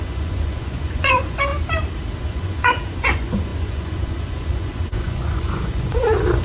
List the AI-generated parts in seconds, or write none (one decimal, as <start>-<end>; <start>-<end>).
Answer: 0.0-1.5; 2.2-6.4